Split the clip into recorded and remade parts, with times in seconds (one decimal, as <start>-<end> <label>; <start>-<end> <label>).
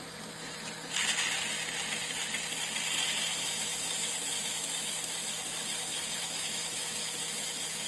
0.0-3.3 recorded; 3.3-5.0 remade; 5.0-5.8 recorded; 5.8-7.9 remade